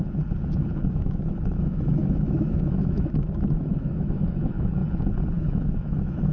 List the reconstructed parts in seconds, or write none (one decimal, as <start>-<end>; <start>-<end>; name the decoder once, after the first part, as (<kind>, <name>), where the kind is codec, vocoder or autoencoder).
0.9-4.8 (autoencoder, DAC-VAE); 5.4-6.3